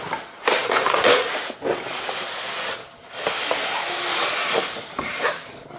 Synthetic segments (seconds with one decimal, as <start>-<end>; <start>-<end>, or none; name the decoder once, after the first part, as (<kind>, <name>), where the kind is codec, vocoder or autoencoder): 0.6-1.3 (vocoder, Vocos)